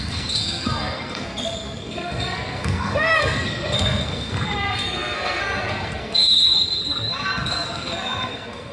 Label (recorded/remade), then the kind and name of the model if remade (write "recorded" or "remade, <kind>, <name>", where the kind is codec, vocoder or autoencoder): remade, codec, SNAC